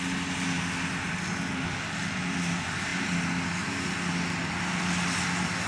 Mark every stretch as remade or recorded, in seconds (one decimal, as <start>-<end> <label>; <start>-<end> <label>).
0.0-5.7 recorded